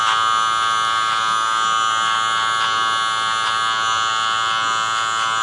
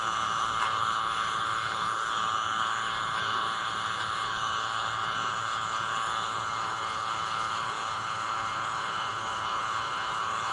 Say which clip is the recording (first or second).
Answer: first